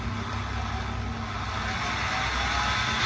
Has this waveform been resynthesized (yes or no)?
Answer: no